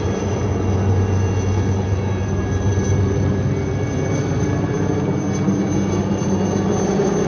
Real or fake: real